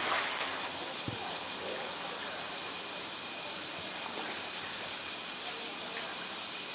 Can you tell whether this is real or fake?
real